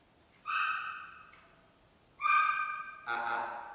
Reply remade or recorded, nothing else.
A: recorded